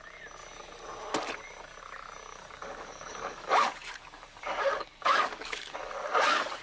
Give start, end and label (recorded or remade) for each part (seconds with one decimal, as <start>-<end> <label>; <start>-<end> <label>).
0.0-2.3 recorded; 2.3-6.6 remade

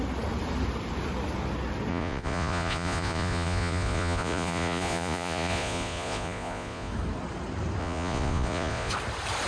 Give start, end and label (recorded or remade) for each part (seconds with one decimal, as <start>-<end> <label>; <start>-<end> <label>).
0.0-1.9 recorded; 1.9-6.9 remade; 6.9-7.8 recorded; 7.8-8.9 remade; 8.9-9.5 recorded

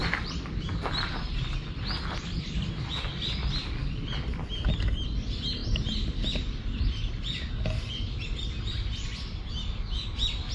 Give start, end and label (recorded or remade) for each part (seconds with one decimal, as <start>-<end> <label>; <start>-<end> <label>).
0.0-3.6 recorded; 3.6-4.1 remade; 4.1-10.5 recorded

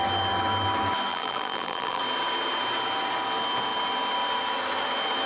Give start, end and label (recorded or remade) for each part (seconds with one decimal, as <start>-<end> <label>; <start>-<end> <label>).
0.0-1.1 recorded; 1.1-2.0 remade; 2.0-5.3 recorded

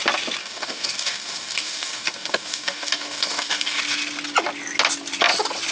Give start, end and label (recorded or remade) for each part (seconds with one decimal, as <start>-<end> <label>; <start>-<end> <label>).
0.0-0.4 recorded; 0.4-3.8 remade; 3.8-5.7 recorded

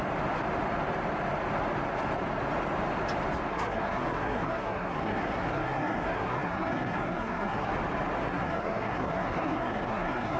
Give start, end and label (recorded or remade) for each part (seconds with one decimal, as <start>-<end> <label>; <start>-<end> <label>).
0.0-3.5 recorded; 3.5-7.7 remade; 7.7-8.2 recorded; 8.2-10.4 remade